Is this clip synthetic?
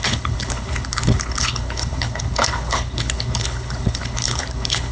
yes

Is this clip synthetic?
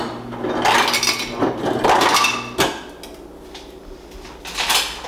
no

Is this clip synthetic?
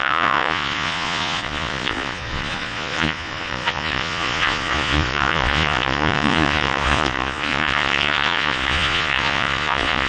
yes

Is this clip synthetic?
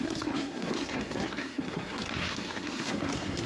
yes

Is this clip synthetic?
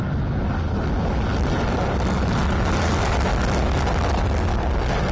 no